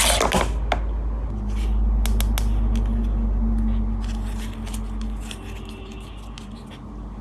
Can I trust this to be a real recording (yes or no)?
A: yes